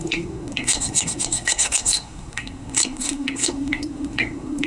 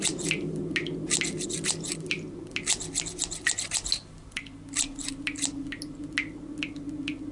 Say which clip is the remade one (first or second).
first